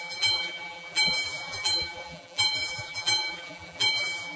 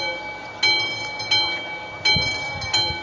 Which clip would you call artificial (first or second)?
first